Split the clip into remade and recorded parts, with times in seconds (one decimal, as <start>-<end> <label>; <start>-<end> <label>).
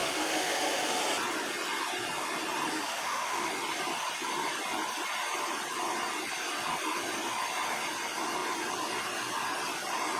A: 0.0-1.0 remade; 1.0-2.7 recorded; 2.7-3.5 remade; 3.5-10.2 recorded